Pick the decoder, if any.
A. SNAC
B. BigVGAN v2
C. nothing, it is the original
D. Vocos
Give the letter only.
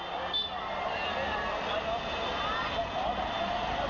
C